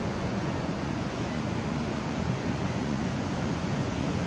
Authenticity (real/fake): fake